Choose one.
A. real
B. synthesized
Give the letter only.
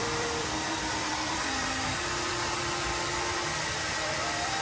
B